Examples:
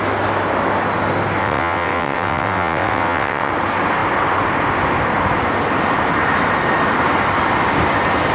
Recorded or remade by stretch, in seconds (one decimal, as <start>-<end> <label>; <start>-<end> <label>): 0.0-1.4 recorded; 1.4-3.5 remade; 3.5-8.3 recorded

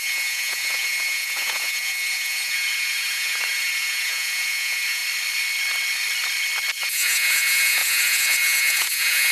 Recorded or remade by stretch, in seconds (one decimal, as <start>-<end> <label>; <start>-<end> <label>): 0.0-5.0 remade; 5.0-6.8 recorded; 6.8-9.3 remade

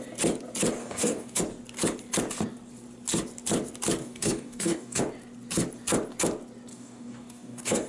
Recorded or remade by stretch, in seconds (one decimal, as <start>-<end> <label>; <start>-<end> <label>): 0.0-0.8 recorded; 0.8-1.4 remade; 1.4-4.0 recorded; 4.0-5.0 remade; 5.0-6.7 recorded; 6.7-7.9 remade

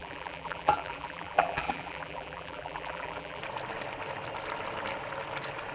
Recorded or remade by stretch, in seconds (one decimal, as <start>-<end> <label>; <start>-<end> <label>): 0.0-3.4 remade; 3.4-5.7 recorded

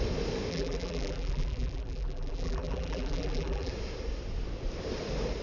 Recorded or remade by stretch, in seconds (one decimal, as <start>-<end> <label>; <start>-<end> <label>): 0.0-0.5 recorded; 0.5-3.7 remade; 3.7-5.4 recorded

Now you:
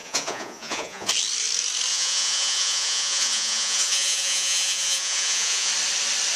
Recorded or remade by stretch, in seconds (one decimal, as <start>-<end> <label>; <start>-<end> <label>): 0.0-1.1 remade; 1.1-1.9 recorded; 1.9-5.7 remade; 5.7-6.4 recorded